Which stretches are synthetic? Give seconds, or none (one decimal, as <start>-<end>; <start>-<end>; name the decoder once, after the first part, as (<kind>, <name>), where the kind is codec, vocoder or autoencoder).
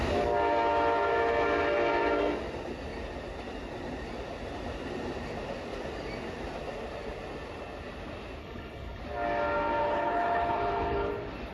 8.4-9.0 (codec, HILCodec); 9.8-11.1